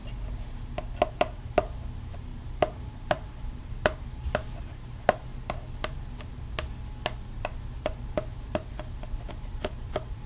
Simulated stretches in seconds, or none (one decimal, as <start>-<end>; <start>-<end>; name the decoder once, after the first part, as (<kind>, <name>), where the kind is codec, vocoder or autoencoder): 1.1-5.3 (vocoder, BigVGAN v2); 9.3-10.3